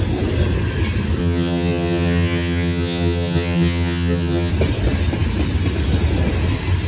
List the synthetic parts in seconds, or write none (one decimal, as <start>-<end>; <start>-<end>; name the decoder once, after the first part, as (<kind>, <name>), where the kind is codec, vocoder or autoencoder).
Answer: 1.2-4.5 (vocoder, HiFi-GAN)